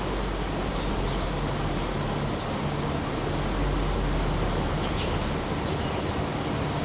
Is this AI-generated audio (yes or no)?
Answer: no